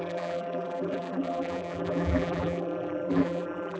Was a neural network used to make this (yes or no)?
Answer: yes